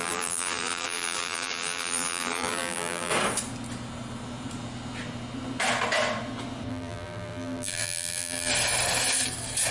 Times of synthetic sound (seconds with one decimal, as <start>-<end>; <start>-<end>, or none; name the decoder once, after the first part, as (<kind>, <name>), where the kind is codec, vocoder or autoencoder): 0.0-3.1 (vocoder, BigVGAN v2); 6.7-8.5